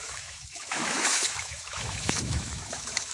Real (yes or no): no